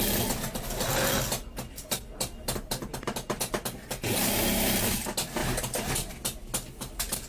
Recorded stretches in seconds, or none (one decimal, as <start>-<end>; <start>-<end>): 0.0-7.3